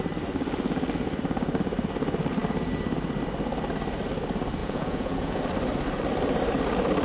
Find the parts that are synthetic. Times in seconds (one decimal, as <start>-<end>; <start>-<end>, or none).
4.6-5.4